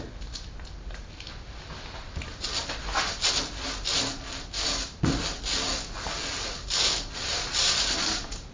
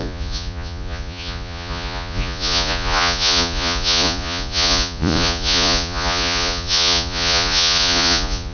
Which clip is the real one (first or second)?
first